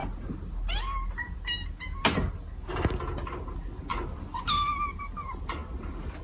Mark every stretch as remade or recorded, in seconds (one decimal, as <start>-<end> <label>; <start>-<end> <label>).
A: 0.0-6.2 recorded

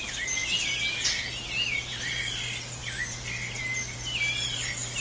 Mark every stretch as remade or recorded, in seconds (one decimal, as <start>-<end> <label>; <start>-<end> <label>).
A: 0.0-5.0 recorded